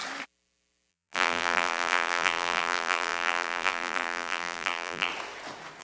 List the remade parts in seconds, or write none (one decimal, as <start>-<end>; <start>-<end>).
0.9-5.1

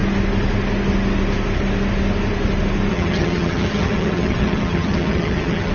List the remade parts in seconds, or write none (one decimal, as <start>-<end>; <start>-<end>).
2.9-5.7

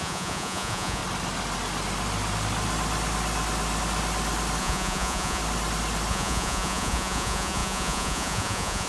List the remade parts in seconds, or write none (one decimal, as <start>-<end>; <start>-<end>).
0.0-1.0; 4.6-5.4; 6.1-8.9

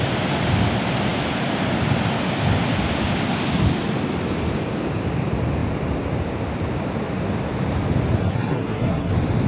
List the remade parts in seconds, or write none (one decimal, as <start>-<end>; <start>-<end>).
8.2-9.1

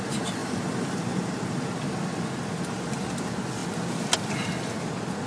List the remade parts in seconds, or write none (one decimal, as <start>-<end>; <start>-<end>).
0.4-3.2

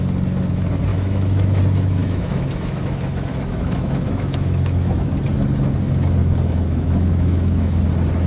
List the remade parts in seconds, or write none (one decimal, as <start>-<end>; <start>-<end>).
0.9-1.6; 2.0-5.1; 6.2-7.9